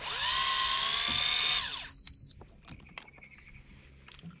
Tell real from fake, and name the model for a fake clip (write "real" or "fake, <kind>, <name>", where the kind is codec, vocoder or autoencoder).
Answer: real